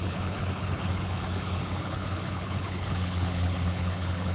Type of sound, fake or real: fake